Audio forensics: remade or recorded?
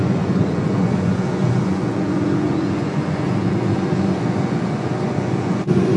remade